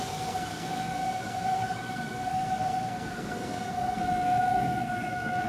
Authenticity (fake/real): fake